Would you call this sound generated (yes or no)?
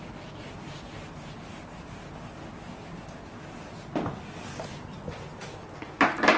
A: no